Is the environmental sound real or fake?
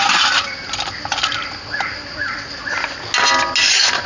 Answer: real